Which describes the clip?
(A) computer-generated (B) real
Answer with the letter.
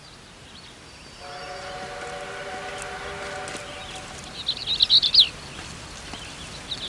B